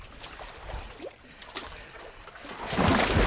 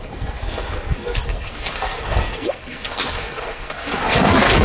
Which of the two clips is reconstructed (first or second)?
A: second